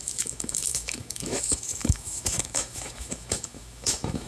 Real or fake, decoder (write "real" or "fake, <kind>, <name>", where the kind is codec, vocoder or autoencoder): fake, autoencoder, DAC-VAE